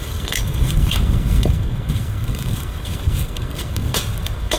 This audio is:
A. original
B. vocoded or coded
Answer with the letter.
B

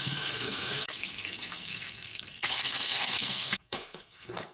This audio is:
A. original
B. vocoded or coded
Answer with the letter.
B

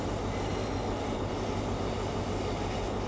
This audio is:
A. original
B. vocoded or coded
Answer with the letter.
A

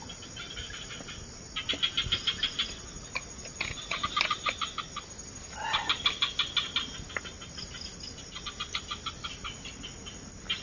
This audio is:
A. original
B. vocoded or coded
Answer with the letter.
A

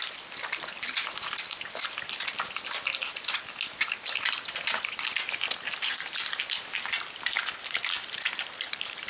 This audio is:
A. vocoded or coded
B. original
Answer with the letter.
B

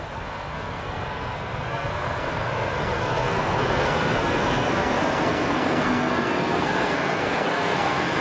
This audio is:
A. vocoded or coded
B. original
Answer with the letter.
A